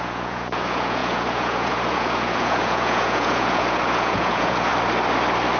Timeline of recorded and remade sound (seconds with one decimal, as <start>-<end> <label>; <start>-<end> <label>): 0.0-4.7 remade; 4.7-5.6 recorded